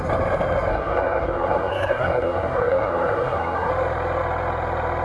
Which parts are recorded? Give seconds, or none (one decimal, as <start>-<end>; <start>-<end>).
0.0-0.7; 3.7-5.0